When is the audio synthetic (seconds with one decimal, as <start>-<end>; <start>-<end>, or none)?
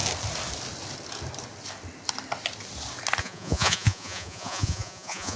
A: 3.2-5.4